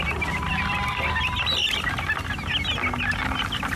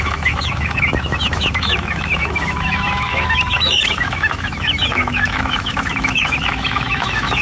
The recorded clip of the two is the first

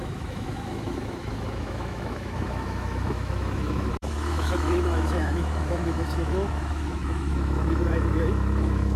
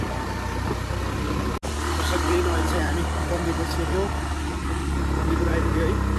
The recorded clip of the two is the second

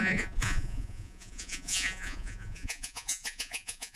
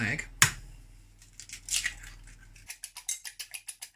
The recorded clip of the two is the second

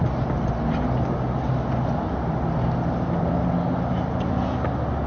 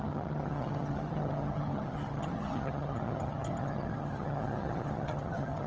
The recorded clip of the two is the first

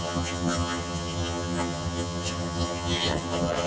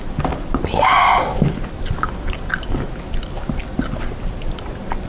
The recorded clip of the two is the second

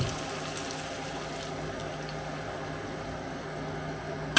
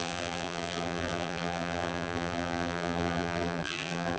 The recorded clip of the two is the first